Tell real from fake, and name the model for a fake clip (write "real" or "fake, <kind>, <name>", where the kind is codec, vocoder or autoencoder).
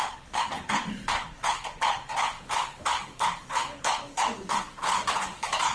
fake, codec, HILCodec